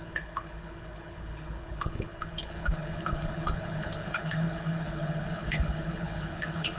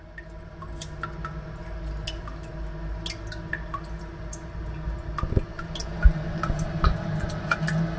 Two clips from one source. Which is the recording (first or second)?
second